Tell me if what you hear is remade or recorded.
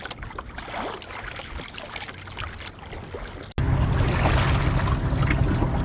recorded